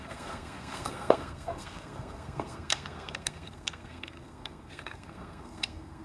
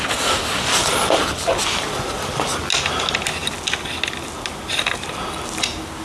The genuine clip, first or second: second